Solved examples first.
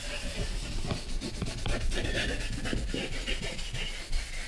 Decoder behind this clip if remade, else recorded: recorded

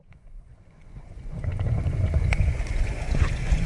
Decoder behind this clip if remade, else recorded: remade, vocoder, Vocos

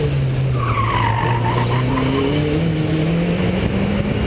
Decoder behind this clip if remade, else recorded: recorded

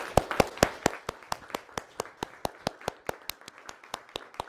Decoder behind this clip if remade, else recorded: recorded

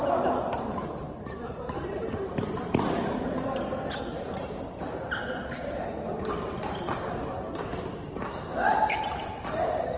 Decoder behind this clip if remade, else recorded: remade, vocoder, BigVGAN v2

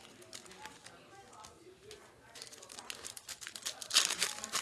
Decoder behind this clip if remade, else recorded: recorded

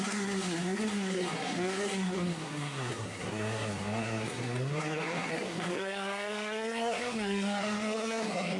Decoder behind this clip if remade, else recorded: remade, codec, SNAC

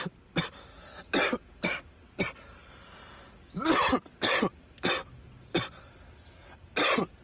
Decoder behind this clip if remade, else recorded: recorded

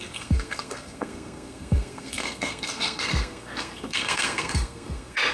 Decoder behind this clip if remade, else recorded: remade, codec, SNAC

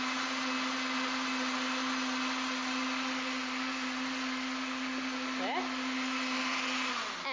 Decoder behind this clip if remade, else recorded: recorded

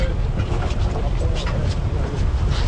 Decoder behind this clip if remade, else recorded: recorded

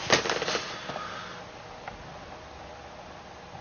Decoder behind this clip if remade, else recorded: recorded